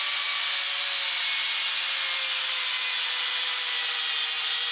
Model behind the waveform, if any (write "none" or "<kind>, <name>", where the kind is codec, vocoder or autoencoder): vocoder, BigVGAN v2